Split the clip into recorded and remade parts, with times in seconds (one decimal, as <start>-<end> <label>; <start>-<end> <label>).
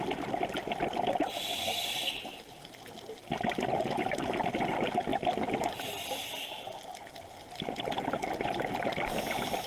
0.0-9.7 recorded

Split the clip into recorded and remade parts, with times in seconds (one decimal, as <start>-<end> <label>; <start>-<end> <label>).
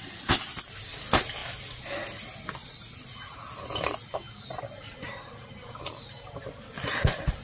0.0-7.4 recorded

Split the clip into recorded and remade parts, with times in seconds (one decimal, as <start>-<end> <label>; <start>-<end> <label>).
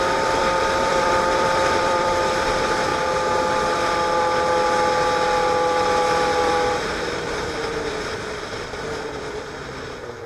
0.0-2.9 remade; 2.9-6.4 recorded; 6.4-10.3 remade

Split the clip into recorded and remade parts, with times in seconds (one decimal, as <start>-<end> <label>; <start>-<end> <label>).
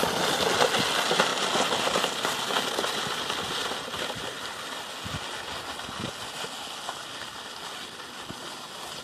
0.0-9.0 recorded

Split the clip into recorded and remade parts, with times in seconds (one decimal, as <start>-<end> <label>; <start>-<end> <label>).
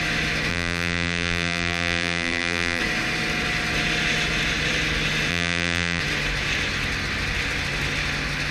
0.0-0.5 recorded; 0.5-2.8 remade; 2.8-5.3 recorded; 5.3-6.0 remade; 6.0-8.5 recorded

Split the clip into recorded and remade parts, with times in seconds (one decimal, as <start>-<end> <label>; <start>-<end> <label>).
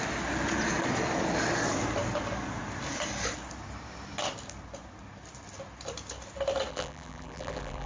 0.0-6.7 recorded; 6.7-7.9 remade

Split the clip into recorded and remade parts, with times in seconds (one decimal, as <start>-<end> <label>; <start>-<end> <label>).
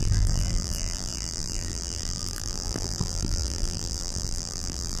0.0-5.0 remade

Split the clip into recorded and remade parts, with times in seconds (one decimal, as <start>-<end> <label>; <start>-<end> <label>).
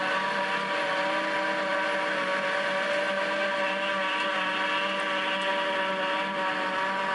0.0-7.1 recorded